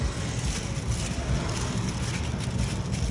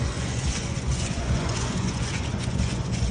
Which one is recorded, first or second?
first